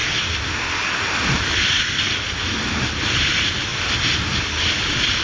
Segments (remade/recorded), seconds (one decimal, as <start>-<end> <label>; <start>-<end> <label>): 0.0-5.2 recorded